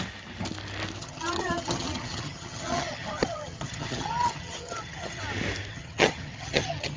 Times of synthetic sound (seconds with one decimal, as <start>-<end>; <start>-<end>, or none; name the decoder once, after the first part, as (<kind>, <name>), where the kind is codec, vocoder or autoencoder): 1.0-5.2 (vocoder, HiFi-GAN); 5.7-7.0